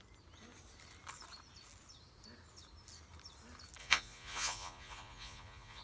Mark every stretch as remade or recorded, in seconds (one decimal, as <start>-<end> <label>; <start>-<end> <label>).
0.0-3.8 recorded; 3.8-5.8 remade